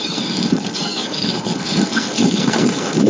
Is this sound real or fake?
fake